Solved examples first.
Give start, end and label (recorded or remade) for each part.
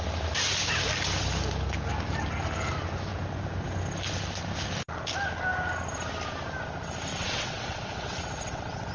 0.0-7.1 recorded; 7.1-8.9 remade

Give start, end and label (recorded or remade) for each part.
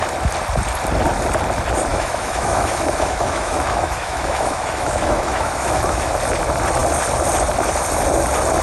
0.0-1.9 recorded; 1.9-6.1 remade; 6.1-8.6 recorded